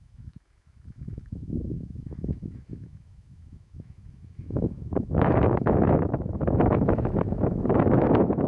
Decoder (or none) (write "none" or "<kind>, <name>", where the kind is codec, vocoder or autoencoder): autoencoder, DAC-VAE